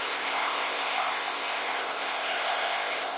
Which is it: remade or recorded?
remade